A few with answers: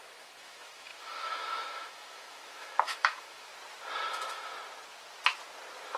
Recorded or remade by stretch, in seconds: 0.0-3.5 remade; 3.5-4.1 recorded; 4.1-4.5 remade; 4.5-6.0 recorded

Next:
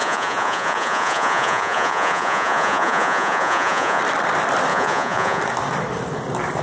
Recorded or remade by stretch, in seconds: 0.0-4.0 remade; 4.0-4.7 recorded; 4.7-5.4 remade; 5.4-6.6 recorded

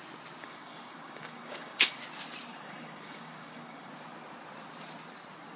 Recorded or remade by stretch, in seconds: 0.0-0.4 recorded; 0.4-1.9 remade; 1.9-2.5 recorded; 2.5-3.9 remade; 3.9-5.6 recorded

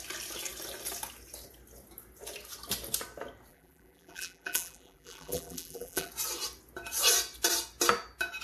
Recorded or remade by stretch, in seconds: 0.0-3.5 recorded; 3.5-6.1 remade; 6.1-8.4 recorded

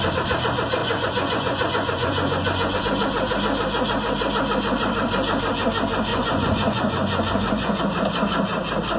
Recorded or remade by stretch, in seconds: 0.0-0.8 recorded; 0.8-2.8 remade; 2.8-6.1 recorded; 6.1-7.8 remade; 7.8-9.0 recorded

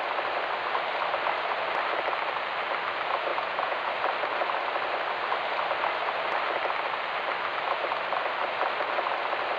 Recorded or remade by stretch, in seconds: 0.0-3.3 recorded; 3.3-3.9 remade; 3.9-9.6 recorded

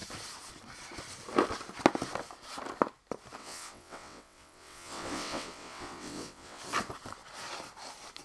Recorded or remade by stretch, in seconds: 0.0-3.4 recorded; 3.4-6.6 remade; 6.6-8.2 recorded